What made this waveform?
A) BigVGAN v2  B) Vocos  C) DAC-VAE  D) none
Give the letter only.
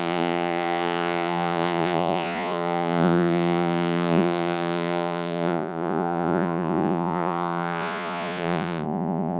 B